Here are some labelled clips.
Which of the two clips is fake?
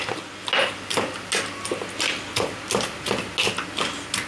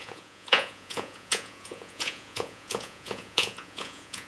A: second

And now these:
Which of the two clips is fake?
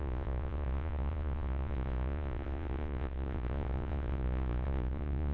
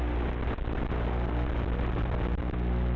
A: first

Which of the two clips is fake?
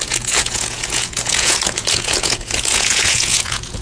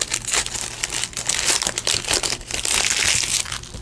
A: first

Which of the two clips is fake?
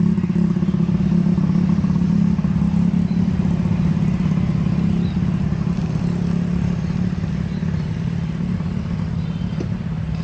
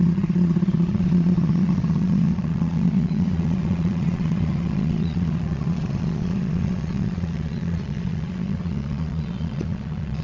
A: second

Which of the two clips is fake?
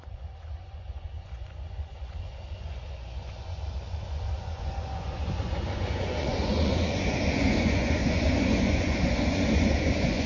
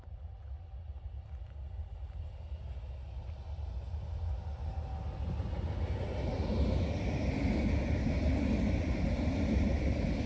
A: first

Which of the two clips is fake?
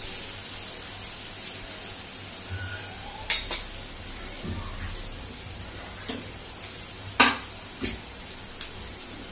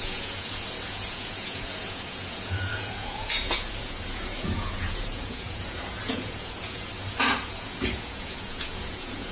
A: second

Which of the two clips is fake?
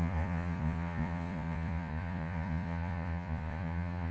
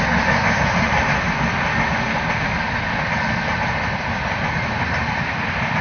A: first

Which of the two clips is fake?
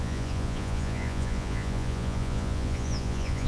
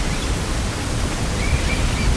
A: first